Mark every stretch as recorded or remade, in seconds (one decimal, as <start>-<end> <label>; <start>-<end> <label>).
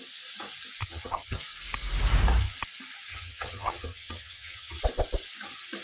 0.0-0.8 recorded; 0.8-1.4 remade; 1.4-3.1 recorded; 3.1-4.8 remade; 4.8-5.8 recorded